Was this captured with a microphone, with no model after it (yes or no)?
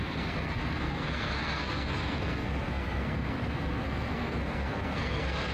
no